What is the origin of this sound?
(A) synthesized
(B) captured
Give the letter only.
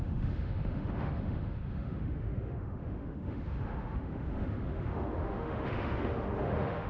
A